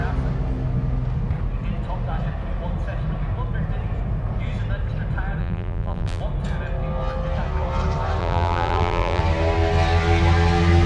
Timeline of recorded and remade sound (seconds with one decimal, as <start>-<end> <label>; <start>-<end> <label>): 0.0-5.4 recorded; 5.4-6.2 remade; 6.2-8.2 recorded; 8.2-9.2 remade; 9.2-10.9 recorded

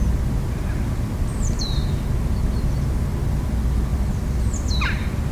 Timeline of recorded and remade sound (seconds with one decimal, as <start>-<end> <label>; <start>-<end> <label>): 0.0-1.3 recorded; 1.3-2.0 remade; 2.0-3.9 recorded; 3.9-5.3 remade

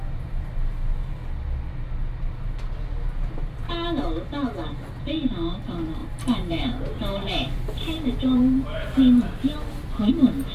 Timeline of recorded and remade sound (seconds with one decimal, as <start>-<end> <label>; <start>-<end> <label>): 0.0-6.0 recorded; 6.0-10.1 remade; 10.1-10.5 recorded

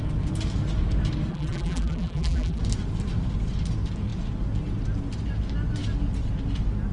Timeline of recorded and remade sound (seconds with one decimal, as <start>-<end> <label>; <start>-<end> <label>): 0.0-1.3 recorded; 1.3-2.6 remade; 2.6-6.9 recorded

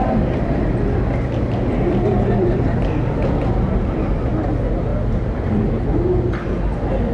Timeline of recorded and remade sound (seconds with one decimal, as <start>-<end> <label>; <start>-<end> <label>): 0.0-4.3 remade; 4.3-4.9 recorded; 4.9-5.7 remade; 5.7-7.1 recorded

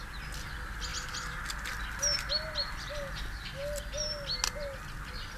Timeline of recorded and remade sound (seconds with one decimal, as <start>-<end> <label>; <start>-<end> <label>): 0.0-5.4 recorded